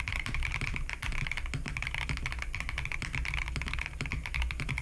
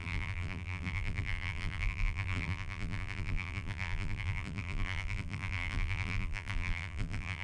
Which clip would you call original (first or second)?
first